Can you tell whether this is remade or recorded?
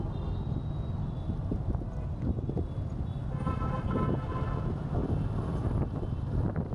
recorded